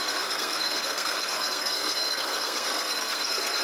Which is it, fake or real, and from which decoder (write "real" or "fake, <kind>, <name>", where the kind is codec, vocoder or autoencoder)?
fake, codec, SNAC